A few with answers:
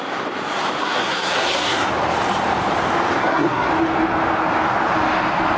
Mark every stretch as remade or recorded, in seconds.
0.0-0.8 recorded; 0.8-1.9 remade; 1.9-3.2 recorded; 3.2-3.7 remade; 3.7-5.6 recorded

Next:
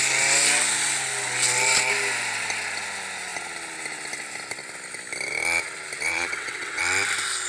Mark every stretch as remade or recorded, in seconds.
0.0-6.1 recorded; 6.1-6.8 remade; 6.8-7.5 recorded

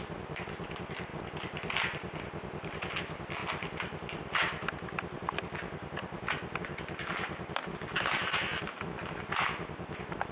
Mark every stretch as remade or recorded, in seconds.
0.0-1.1 remade; 1.1-3.0 recorded; 3.0-7.6 remade; 7.6-9.1 recorded; 9.1-10.3 remade